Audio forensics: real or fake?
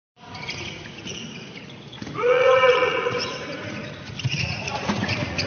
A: fake